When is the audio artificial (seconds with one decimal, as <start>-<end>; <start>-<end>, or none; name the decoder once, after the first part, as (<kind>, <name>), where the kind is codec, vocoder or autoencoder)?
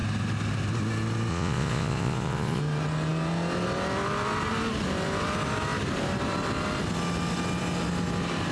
1.3-2.6 (vocoder, Vocos)